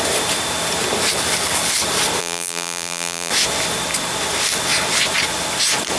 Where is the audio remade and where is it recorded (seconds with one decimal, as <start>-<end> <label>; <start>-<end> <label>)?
0.0-2.2 recorded; 2.2-3.3 remade; 3.3-6.0 recorded